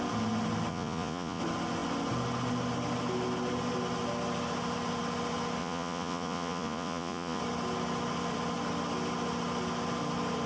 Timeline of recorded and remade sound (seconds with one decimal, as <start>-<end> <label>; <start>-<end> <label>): 0.0-0.7 recorded; 0.7-1.4 remade; 1.4-5.6 recorded; 5.6-7.4 remade; 7.4-10.5 recorded

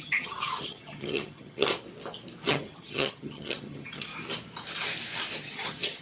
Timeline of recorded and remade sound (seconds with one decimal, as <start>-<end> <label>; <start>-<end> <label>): 0.0-1.7 remade; 1.7-2.5 recorded; 2.5-4.1 remade; 4.1-5.4 recorded; 5.4-6.0 remade

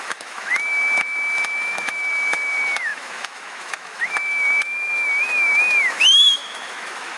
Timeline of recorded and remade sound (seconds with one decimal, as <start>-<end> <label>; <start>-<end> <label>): 0.0-7.2 remade

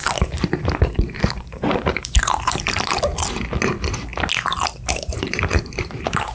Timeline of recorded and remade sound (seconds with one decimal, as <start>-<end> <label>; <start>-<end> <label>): 0.0-3.1 remade; 3.1-4.9 recorded; 4.9-6.3 remade

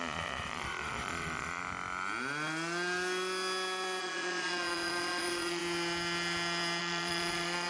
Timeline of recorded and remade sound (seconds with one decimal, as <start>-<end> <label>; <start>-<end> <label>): 0.0-1.6 remade; 1.6-4.0 recorded; 4.0-5.6 remade; 5.6-6.8 recorded; 6.8-7.7 remade

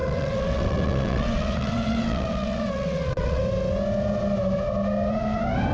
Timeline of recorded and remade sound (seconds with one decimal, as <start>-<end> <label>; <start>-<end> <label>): 0.0-3.4 remade; 3.4-5.7 recorded

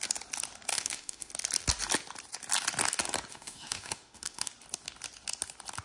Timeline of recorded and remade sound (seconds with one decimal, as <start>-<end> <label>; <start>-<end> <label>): 0.0-0.7 recorded; 0.7-1.3 remade; 1.3-3.3 recorded; 3.3-4.5 remade; 4.5-5.8 recorded

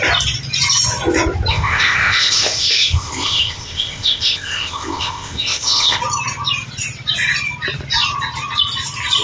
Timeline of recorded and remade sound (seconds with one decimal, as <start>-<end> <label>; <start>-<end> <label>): 0.0-1.5 recorded; 1.5-6.0 remade; 6.0-9.2 recorded